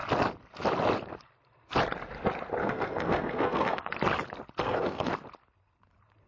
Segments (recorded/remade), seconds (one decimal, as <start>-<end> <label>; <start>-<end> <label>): 0.0-2.6 recorded; 2.6-3.9 remade; 3.9-4.6 recorded; 4.6-5.1 remade; 5.1-6.3 recorded